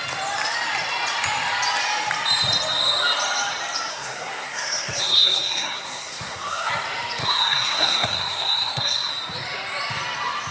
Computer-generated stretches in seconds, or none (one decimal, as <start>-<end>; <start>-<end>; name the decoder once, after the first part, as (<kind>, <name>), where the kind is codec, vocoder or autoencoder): 3.9-6.7 (codec, SNAC); 7.2-9.1